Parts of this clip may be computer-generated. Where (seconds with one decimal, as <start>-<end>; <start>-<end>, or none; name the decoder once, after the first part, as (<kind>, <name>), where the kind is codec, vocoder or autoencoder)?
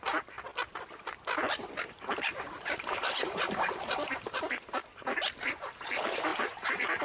0.0-0.5 (vocoder, BigVGAN v2); 1.8-7.0